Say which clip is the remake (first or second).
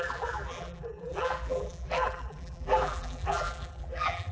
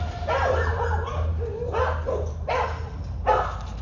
first